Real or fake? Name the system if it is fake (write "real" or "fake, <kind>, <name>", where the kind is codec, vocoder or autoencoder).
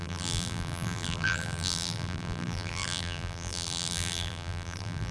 fake, vocoder, BigVGAN v2